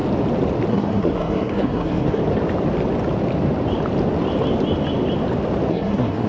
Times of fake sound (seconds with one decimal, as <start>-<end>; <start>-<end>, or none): 0.7-2.2; 5.7-6.3